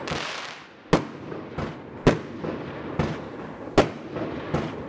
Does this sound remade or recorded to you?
recorded